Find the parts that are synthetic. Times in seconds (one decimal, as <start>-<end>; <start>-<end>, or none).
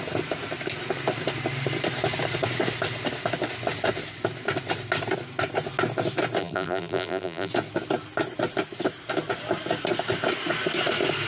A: 6.4-7.5